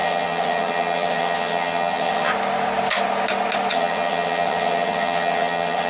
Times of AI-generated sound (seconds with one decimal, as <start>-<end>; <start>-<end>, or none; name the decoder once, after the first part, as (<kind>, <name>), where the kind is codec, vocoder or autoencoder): 0.0-2.3 (vocoder, HiFi-GAN); 3.7-5.9